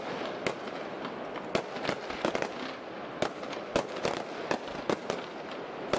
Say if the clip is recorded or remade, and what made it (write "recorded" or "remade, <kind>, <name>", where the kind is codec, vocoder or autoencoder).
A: recorded